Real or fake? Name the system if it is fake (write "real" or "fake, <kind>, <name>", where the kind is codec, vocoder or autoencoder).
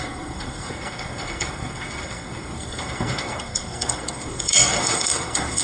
fake, codec, SNAC